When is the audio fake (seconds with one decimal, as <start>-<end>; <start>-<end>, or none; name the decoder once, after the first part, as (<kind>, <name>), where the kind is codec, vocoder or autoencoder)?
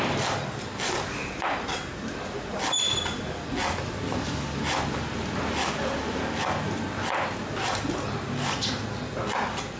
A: none